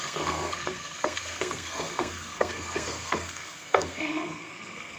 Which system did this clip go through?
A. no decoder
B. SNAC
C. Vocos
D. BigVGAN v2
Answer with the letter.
B